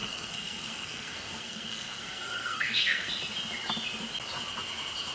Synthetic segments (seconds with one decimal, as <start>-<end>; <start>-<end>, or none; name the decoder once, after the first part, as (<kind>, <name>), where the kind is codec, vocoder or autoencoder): 0.0-3.1 (codec, SNAC)